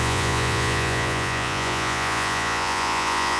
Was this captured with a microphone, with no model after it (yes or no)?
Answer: no